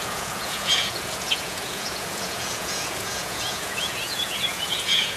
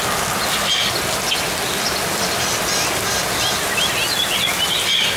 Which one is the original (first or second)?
second